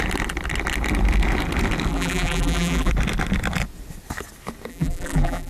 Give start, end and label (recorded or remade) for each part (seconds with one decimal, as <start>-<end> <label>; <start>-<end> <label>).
0.0-1.9 recorded; 1.9-2.9 remade; 2.9-4.7 recorded; 4.7-5.5 remade